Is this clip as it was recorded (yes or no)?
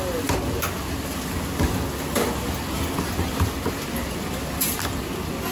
yes